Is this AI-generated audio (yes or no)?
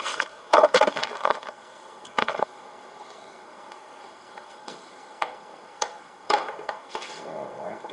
yes